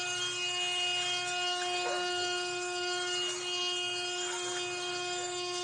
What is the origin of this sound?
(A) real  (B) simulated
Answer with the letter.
B